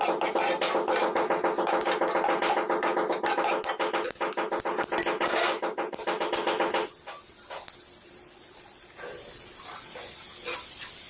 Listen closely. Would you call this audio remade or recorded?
recorded